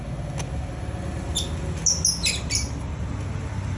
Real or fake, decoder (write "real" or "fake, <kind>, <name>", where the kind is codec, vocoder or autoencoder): real